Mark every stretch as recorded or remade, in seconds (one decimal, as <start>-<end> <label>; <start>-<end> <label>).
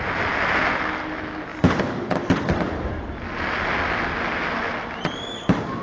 0.0-5.8 recorded